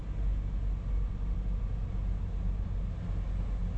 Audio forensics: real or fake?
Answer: real